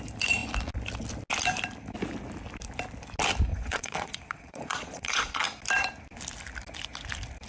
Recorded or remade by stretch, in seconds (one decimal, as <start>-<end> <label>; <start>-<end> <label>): 0.0-3.5 recorded; 3.5-5.4 remade; 5.4-7.5 recorded